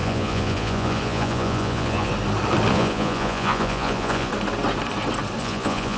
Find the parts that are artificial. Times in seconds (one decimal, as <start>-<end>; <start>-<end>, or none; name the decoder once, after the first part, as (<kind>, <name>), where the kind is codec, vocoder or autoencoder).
0.0-2.1 (vocoder, Vocos); 2.7-4.3; 5.4-6.0